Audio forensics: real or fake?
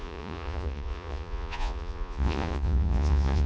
fake